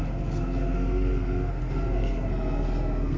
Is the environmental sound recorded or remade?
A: remade